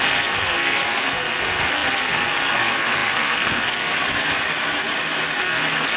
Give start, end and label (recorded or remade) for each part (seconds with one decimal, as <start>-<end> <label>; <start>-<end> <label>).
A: 0.0-3.9 remade; 3.9-5.4 recorded; 5.4-6.0 remade